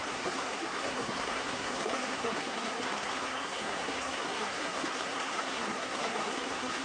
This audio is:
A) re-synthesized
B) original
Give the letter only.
A